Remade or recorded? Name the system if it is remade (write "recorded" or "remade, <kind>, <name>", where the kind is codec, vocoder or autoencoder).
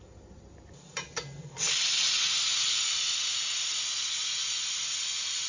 recorded